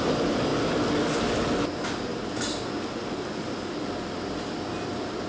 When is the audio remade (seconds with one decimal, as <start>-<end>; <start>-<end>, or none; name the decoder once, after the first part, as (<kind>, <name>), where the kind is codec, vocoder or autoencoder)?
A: none